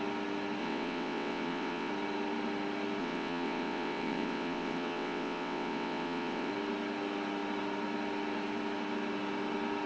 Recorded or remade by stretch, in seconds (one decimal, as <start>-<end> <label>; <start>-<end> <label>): 0.0-0.6 recorded; 0.6-1.9 remade; 1.9-3.0 recorded; 3.0-6.5 remade; 6.5-9.9 recorded